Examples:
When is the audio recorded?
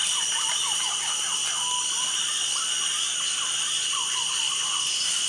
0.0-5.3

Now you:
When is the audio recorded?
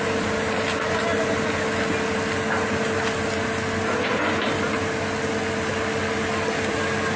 0.0-7.2